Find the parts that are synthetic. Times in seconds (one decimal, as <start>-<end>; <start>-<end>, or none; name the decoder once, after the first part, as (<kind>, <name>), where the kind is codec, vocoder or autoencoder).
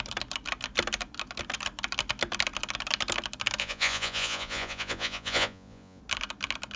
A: 3.6-6.0 (vocoder, Vocos)